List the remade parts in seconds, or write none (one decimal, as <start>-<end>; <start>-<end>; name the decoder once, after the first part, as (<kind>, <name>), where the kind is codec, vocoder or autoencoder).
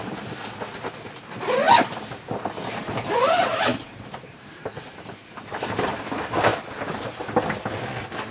3.7-5.9 (vocoder, BigVGAN v2)